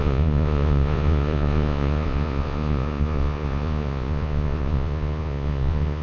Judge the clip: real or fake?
fake